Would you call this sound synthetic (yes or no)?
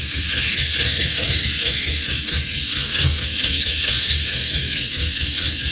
yes